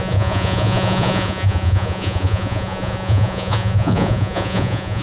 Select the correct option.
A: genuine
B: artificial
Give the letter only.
B